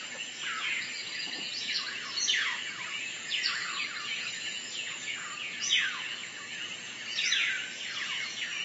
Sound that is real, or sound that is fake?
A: fake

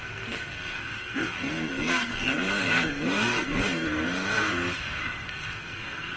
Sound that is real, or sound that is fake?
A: fake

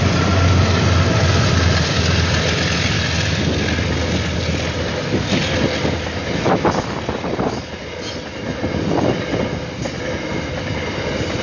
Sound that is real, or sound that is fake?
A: real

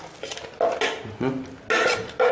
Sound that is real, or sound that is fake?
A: real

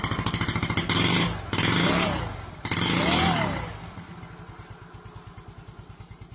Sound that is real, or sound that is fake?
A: real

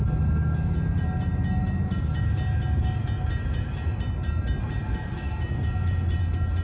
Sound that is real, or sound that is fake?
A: real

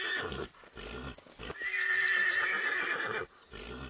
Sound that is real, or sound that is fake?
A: real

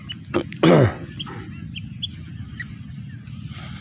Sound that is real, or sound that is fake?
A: real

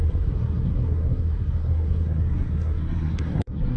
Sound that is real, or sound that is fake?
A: fake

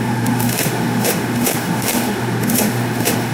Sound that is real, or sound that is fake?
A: fake